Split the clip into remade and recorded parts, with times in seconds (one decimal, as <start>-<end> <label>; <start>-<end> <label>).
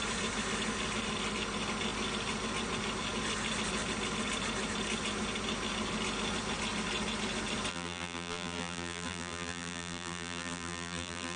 0.0-7.7 recorded; 7.7-11.4 remade